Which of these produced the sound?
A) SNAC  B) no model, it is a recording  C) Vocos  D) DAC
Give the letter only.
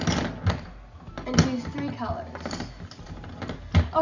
B